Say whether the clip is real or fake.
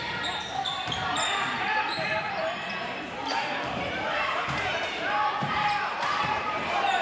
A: fake